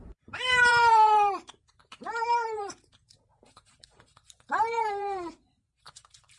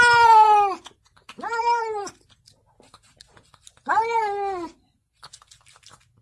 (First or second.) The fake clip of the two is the first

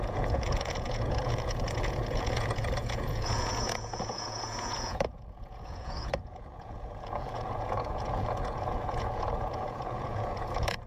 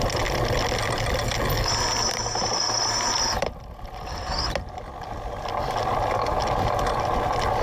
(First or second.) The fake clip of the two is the first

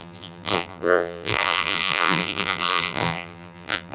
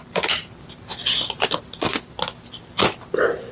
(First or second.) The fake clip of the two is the first